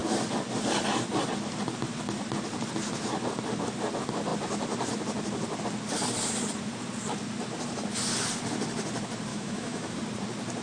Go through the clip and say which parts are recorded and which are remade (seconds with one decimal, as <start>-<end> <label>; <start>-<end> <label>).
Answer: 0.0-9.3 recorded; 9.3-9.9 remade; 9.9-10.6 recorded